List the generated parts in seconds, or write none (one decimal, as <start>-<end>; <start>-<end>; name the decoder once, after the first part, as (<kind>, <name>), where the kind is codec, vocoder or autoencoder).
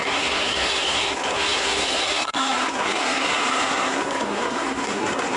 0.0-5.4 (codec, SNAC)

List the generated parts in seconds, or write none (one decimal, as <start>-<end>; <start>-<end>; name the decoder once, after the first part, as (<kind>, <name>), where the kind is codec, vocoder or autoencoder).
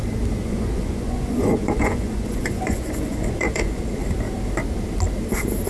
0.4-3.8 (vocoder, Vocos)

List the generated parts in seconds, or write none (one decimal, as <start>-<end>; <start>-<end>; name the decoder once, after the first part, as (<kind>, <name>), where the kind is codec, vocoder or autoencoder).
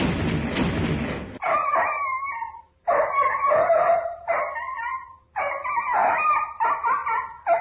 1.6-4.4 (vocoder, BigVGAN v2); 6.0-6.5